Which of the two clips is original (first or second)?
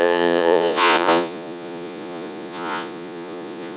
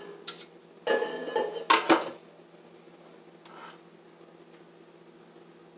second